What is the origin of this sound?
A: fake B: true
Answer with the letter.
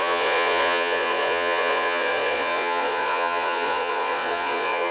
A